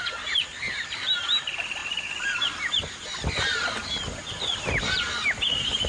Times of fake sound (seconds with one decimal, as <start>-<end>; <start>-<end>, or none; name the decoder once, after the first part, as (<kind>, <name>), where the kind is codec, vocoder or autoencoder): none